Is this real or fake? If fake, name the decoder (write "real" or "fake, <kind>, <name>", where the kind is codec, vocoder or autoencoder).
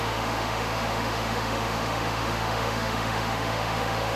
fake, autoencoder, DAC-VAE